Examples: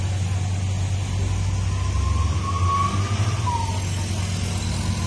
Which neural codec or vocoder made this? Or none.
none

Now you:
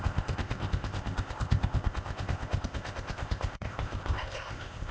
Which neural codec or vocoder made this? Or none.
codec, ZipCodec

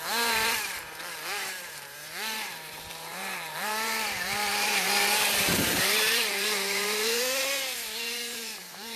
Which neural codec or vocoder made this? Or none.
vocoder, BigVGAN v2